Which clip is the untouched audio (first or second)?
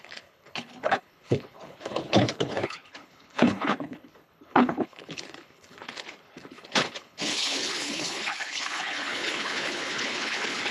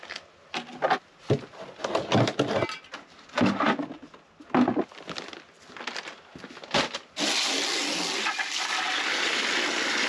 second